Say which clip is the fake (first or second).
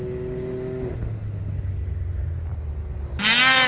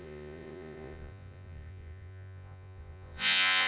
second